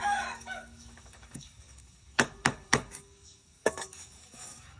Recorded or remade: remade